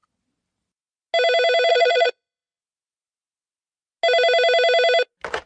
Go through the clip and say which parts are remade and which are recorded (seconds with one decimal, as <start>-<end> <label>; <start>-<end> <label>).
0.0-1.7 recorded; 1.7-2.6 remade; 2.6-5.5 recorded